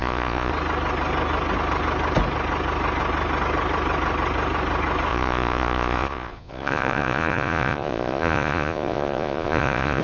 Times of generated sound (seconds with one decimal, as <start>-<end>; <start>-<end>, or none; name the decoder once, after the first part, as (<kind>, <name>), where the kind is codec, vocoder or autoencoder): 0.0-0.5 (vocoder, Vocos); 5.1-10.0